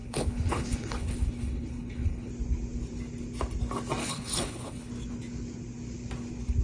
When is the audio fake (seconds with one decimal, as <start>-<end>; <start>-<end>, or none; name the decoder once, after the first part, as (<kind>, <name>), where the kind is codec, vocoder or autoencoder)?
0.0-2.3 (codec, HILCodec); 4.0-4.9